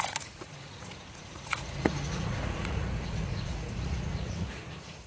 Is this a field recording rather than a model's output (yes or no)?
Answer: no